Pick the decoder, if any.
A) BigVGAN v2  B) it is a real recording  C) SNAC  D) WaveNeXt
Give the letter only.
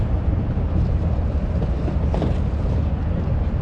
B